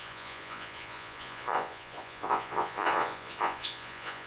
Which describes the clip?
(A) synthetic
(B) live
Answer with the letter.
A